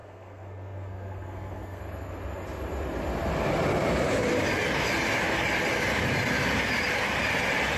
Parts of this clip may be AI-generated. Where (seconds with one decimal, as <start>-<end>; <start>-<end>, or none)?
0.0-1.8